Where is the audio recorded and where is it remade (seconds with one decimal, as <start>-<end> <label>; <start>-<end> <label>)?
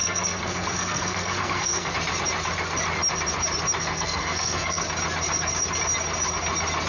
0.0-1.9 remade; 1.9-3.8 recorded; 3.8-4.8 remade; 4.8-6.9 recorded